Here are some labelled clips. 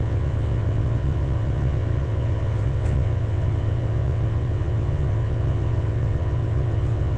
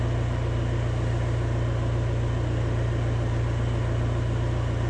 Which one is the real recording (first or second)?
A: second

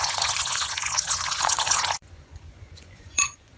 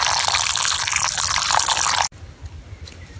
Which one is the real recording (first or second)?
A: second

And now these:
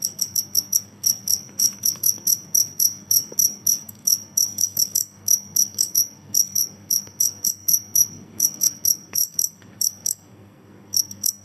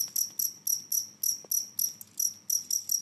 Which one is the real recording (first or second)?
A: second